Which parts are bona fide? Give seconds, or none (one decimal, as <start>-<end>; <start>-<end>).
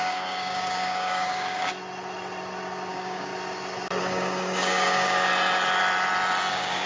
1.7-2.9; 3.3-4.0; 5.3-6.5